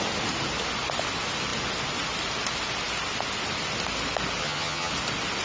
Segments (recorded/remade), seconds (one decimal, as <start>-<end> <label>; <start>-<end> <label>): 0.0-4.4 recorded; 4.4-4.9 remade; 4.9-5.4 recorded